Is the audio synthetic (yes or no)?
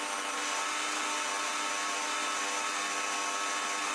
no